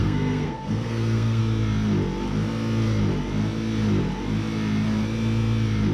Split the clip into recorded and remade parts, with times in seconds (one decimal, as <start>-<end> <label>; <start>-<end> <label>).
0.0-1.4 remade; 1.4-5.9 recorded